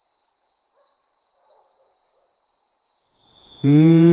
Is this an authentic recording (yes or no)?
no